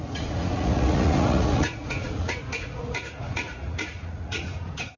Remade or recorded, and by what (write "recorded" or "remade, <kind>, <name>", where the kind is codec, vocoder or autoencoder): remade, vocoder, Vocos